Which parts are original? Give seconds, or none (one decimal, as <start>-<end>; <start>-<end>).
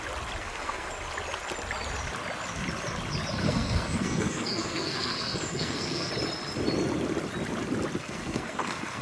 0.0-0.4; 0.9-3.4; 6.1-8.0